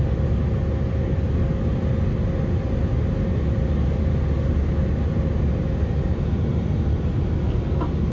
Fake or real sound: real